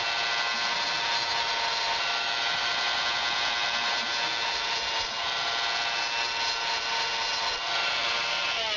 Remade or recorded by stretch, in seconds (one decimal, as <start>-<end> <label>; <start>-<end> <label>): 0.0-2.1 recorded; 2.1-2.7 remade; 2.7-8.8 recorded

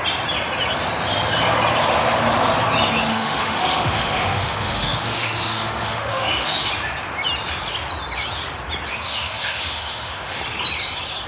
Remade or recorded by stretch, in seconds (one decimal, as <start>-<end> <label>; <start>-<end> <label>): 0.0-3.1 recorded; 3.1-6.7 remade; 6.7-8.9 recorded; 8.9-10.4 remade; 10.4-11.3 recorded

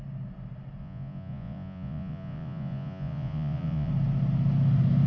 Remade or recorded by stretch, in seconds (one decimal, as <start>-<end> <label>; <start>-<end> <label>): 0.0-0.8 recorded; 0.8-3.9 remade; 3.9-5.1 recorded